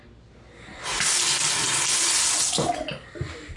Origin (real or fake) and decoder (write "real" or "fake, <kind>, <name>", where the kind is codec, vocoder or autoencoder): real